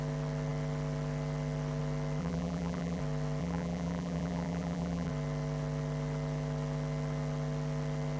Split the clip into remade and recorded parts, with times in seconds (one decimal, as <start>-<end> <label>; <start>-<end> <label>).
0.0-2.2 recorded; 2.2-3.0 remade; 3.0-3.4 recorded; 3.4-5.1 remade; 5.1-8.2 recorded